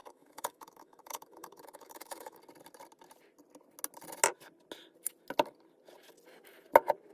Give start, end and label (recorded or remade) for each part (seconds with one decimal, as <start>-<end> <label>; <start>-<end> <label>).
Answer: 0.0-2.4 remade; 2.4-7.1 recorded